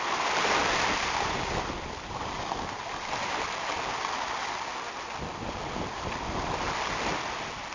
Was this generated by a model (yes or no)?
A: no